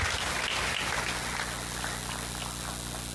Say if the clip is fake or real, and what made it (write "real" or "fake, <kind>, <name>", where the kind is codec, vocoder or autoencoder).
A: real